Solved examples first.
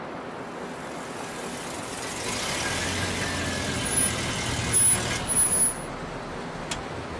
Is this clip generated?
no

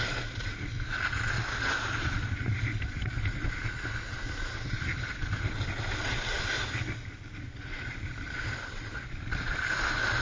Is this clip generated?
no